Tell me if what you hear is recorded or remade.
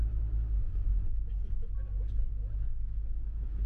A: recorded